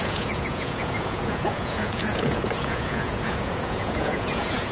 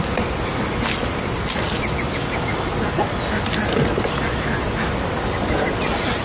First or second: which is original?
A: second